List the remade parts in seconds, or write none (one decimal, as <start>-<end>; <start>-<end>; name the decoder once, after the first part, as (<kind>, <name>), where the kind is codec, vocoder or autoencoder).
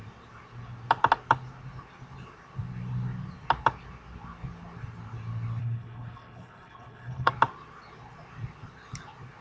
5.6-7.3 (codec, HILCodec)